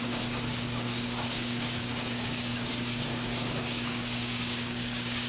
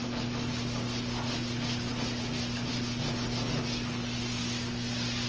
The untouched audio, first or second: second